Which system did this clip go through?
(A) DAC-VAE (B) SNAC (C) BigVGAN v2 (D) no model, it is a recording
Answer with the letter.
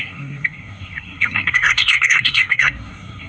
B